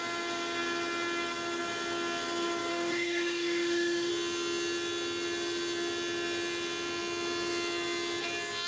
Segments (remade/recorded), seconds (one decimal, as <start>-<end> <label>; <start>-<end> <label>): 0.0-2.7 recorded; 2.7-4.1 remade; 4.1-8.7 recorded